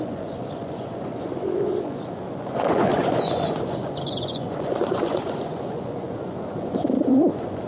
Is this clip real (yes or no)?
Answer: no